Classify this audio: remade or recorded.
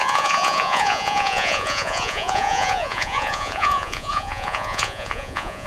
remade